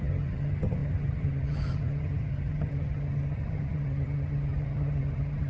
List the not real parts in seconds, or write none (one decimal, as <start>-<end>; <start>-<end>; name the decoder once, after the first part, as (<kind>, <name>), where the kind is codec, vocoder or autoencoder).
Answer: 0.0-5.5 (vocoder, HiFi-GAN)